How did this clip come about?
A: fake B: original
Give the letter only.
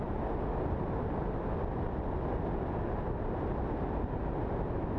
B